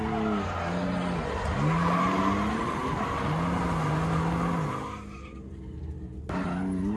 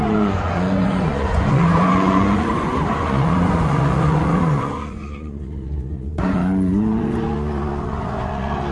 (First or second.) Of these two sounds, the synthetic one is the second